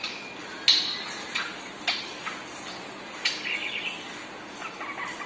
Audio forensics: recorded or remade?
recorded